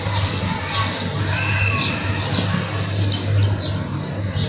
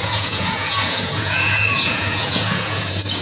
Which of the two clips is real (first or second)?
first